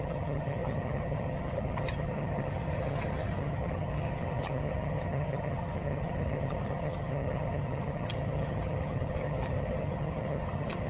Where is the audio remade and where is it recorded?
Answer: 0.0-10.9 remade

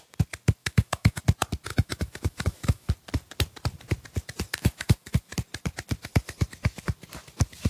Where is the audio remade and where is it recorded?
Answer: 0.0-0.6 recorded; 0.6-1.2 remade; 1.2-1.7 recorded; 1.7-2.9 remade; 2.9-4.6 recorded; 4.6-5.3 remade; 5.3-7.7 recorded

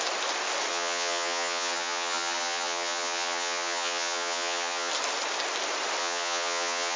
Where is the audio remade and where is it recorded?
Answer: 0.0-0.7 recorded; 0.7-4.9 remade; 4.9-6.0 recorded; 6.0-7.0 remade

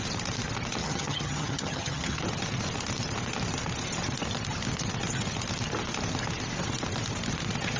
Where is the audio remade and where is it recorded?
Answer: 0.0-0.8 recorded; 0.8-2.2 remade; 2.2-7.8 recorded

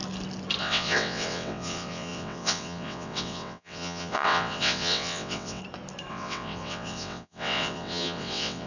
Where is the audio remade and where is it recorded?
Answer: 0.0-0.6 recorded; 0.6-5.6 remade; 5.6-6.1 recorded; 6.1-8.7 remade

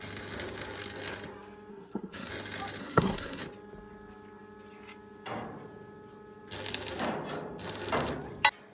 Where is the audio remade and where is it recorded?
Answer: 0.0-1.7 recorded; 1.7-2.3 remade; 2.3-2.8 recorded; 2.8-3.4 remade; 3.4-8.7 recorded